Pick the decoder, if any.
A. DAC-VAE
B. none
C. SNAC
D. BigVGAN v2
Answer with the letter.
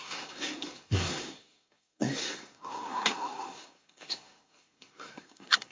C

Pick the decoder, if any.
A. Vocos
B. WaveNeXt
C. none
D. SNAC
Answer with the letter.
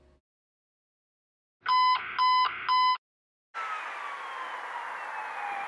C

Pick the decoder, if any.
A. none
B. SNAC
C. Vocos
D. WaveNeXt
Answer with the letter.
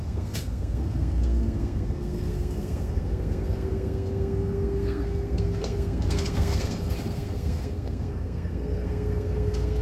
B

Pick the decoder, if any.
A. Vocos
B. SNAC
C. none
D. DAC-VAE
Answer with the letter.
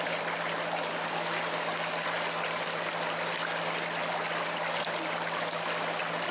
C